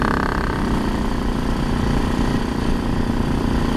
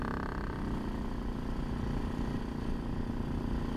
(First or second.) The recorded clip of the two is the second